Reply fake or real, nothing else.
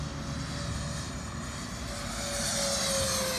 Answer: real